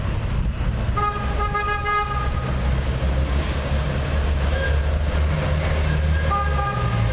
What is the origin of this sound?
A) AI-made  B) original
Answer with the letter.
B